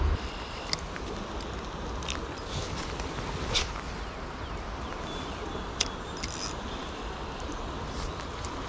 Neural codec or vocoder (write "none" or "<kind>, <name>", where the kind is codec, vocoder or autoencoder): none